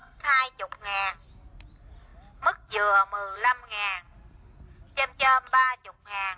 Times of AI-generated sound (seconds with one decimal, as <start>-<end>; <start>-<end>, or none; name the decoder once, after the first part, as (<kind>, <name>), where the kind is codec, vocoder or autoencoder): none